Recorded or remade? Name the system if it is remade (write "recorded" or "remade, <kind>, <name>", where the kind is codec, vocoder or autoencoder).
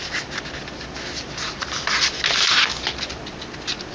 recorded